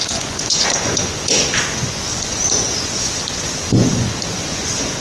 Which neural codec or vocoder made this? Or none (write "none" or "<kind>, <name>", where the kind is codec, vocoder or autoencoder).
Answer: vocoder, Vocos